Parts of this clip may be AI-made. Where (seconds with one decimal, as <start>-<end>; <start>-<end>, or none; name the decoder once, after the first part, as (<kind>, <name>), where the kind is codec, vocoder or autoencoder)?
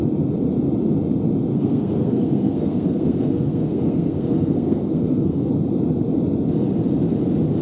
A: 1.5-5.5 (codec, SNAC)